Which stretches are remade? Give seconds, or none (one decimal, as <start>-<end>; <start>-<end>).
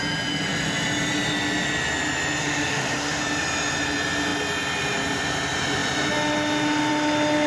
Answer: 2.4-3.2